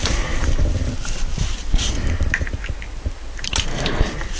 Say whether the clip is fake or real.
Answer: real